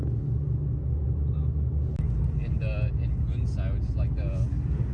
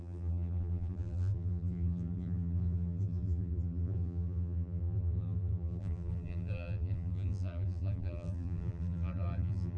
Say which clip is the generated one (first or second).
second